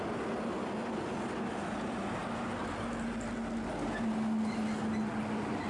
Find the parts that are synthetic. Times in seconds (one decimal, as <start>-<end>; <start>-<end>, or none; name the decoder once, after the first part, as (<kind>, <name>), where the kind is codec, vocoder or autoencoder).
none